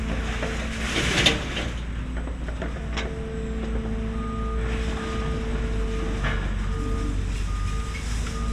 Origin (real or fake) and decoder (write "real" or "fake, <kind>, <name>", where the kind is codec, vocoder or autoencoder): real